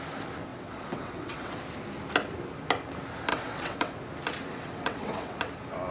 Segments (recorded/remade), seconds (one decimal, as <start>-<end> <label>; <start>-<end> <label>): 0.0-0.5 recorded; 0.5-1.6 remade; 1.6-3.3 recorded; 3.3-4.0 remade; 4.0-4.5 recorded; 4.5-5.4 remade; 5.4-5.9 recorded